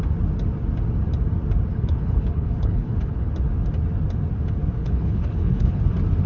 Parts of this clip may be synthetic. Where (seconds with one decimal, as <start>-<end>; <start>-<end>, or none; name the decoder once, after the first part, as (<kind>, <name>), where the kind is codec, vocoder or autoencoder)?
1.7-3.3 (codec, HILCodec); 4.8-5.8